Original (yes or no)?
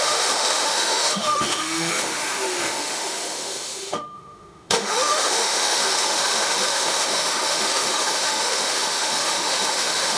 no